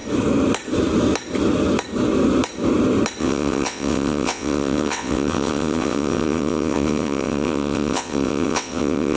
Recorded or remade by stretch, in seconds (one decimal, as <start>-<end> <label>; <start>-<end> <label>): 0.0-3.2 recorded; 3.2-9.2 remade